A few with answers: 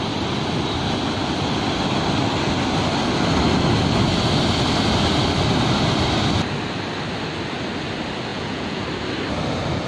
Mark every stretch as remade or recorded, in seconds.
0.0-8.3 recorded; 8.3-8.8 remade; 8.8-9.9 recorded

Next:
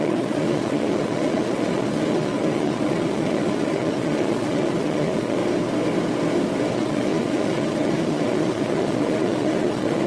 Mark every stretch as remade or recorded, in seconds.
0.0-5.4 remade; 5.4-6.7 recorded; 6.7-10.1 remade

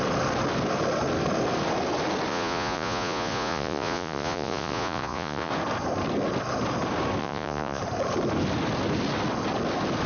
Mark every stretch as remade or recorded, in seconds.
0.0-2.3 recorded; 2.3-5.5 remade; 5.5-7.2 recorded; 7.2-7.8 remade; 7.8-10.1 recorded

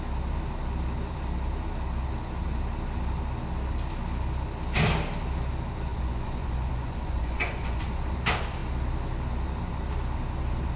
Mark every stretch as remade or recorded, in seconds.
0.0-5.9 recorded; 5.9-7.9 remade; 7.9-10.8 recorded